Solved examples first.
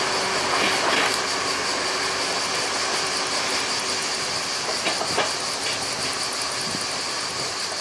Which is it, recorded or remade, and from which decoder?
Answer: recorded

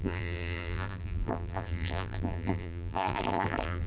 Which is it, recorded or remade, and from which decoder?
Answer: remade, vocoder, BigVGAN v2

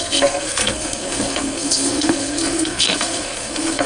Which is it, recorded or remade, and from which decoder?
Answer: remade, codec, SNAC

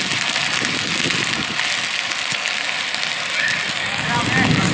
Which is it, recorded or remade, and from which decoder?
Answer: recorded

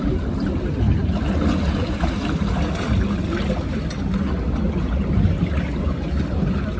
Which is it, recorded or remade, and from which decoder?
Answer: recorded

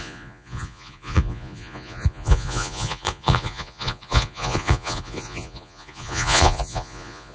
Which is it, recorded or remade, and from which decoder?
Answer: remade, vocoder, Vocos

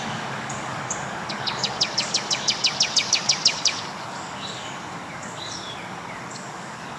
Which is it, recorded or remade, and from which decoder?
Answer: remade, codec, DAC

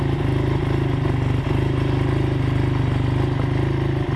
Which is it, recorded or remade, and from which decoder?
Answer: recorded